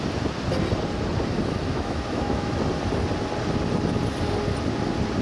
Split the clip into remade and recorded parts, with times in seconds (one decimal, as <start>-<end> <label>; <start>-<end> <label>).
0.0-1.7 recorded; 1.7-2.6 remade; 2.6-5.2 recorded